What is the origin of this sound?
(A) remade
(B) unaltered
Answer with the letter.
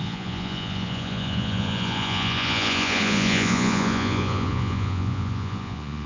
A